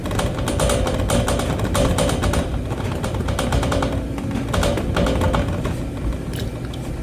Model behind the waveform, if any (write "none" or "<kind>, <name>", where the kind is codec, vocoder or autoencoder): none